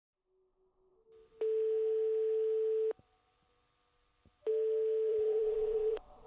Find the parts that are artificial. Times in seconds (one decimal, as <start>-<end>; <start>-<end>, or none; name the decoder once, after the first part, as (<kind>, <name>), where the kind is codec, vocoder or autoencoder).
5.1-6.3 (vocoder, WaveNeXt)